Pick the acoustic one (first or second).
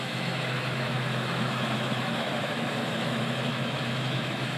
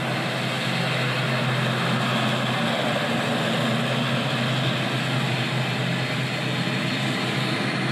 second